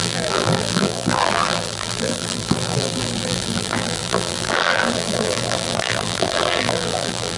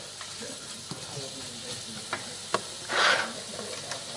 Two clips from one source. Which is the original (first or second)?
second